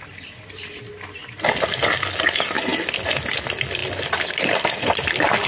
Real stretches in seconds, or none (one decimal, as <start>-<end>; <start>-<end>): 0.0-5.5